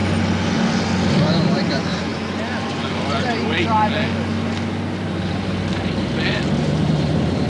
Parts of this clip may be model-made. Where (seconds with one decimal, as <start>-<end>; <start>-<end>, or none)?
1.2-2.1; 6.6-7.5